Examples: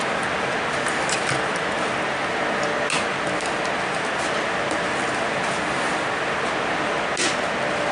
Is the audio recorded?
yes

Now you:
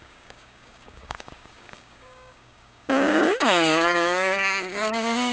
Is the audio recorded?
no